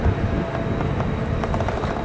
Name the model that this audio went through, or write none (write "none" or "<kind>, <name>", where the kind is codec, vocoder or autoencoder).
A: none